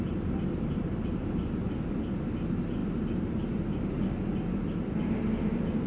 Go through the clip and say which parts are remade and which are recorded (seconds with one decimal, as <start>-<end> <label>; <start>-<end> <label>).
0.0-5.9 recorded